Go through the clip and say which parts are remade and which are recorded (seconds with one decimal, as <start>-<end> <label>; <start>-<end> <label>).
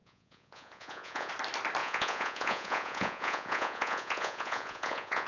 0.0-1.3 remade; 1.3-1.8 recorded; 1.8-5.3 remade